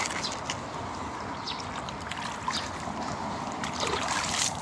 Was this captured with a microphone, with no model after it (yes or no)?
yes